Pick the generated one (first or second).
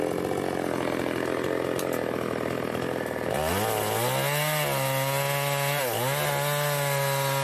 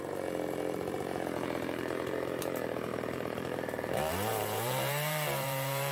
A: second